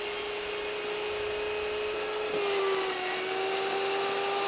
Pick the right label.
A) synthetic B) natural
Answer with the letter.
B